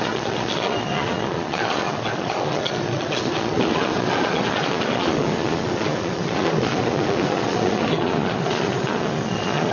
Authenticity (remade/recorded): remade